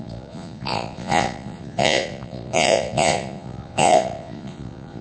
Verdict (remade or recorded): remade